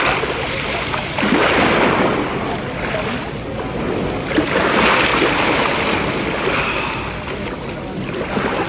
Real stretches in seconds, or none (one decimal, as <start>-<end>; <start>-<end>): 0.0-8.7